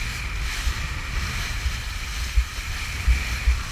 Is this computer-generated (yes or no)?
yes